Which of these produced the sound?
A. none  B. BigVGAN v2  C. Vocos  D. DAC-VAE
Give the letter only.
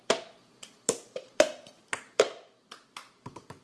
B